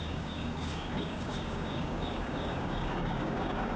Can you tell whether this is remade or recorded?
remade